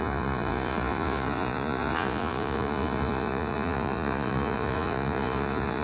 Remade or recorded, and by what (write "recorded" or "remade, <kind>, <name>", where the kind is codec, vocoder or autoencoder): remade, vocoder, Vocos